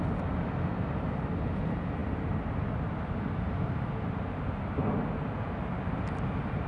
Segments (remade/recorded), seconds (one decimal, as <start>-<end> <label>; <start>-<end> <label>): 0.0-6.7 recorded